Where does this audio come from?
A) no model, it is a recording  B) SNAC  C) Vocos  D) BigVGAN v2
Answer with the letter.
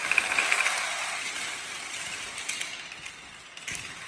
A